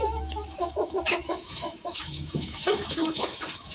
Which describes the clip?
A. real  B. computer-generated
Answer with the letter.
B